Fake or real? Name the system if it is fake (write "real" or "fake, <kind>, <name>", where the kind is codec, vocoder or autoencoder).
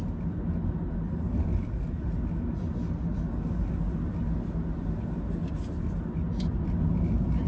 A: real